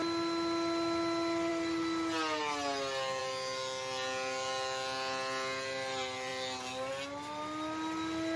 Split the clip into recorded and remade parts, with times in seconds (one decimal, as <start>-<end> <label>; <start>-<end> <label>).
0.0-8.4 recorded